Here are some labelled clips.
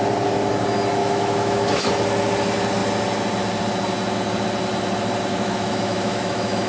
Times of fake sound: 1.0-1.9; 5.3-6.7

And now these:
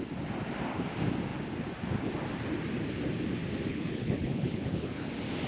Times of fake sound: 3.7-5.1

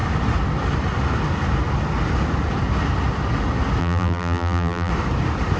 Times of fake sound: 3.8-4.9

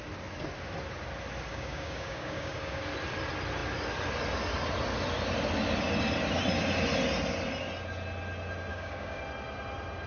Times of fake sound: 1.5-2.8; 8.7-9.2

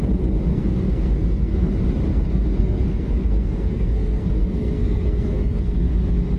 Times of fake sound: 0.5-1.7; 2.1-5.9